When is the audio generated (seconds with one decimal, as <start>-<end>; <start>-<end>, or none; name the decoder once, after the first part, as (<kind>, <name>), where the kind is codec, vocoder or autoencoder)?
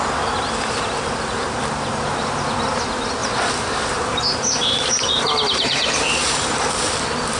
3.2-6.7 (vocoder, BigVGAN v2)